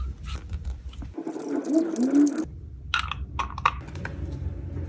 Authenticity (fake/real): real